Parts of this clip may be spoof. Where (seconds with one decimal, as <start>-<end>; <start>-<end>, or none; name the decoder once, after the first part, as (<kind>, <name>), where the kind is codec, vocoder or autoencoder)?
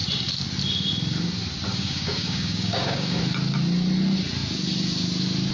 1.7-3.2 (codec, DAC)